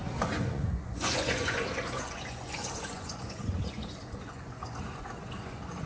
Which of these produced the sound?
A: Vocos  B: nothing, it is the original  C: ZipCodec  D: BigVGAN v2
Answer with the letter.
A